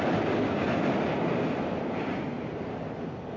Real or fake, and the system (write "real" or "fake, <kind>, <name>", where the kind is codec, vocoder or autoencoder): real